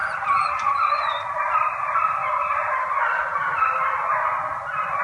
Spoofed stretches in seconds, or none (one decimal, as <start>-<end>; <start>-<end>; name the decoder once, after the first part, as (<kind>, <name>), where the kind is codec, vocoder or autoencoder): 0.0-3.0 (vocoder, BigVGAN v2)